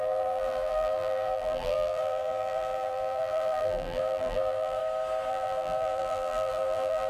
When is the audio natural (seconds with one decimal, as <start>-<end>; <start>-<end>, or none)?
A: 4.8-5.3